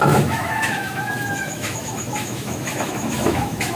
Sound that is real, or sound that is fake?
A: fake